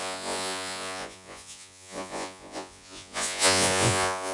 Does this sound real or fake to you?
fake